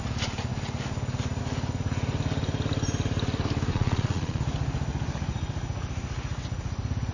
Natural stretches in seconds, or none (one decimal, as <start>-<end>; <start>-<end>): 0.0-3.7; 4.4-7.1